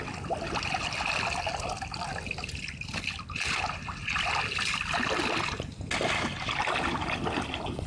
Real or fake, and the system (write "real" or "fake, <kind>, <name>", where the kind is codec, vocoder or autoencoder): real